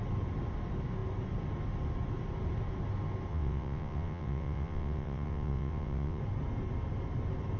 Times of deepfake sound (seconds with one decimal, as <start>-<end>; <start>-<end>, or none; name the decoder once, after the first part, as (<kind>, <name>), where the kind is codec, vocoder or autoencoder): 3.3-6.2 (vocoder, WaveNeXt)